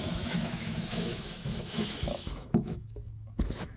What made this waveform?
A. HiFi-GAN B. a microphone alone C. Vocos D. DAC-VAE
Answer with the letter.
D